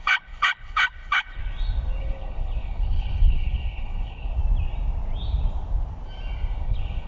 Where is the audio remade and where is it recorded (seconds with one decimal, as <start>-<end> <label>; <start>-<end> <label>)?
0.0-1.4 remade; 1.4-2.0 recorded; 2.0-4.4 remade; 4.4-6.6 recorded; 6.6-7.1 remade